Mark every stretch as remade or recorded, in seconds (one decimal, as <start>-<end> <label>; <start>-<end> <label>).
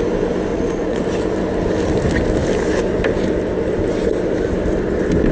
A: 0.0-0.5 recorded; 0.5-1.0 remade; 1.0-5.3 recorded